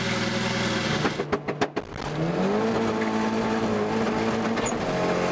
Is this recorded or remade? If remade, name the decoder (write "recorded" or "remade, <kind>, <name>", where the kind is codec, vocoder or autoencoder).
recorded